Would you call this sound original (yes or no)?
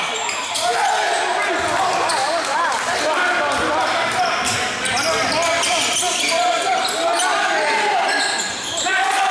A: yes